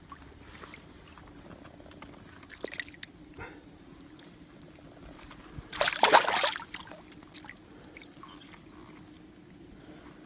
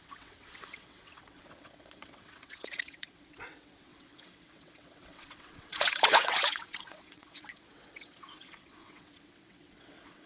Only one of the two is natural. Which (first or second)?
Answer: first